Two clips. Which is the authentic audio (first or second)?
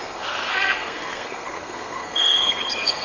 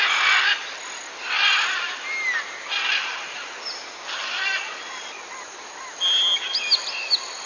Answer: second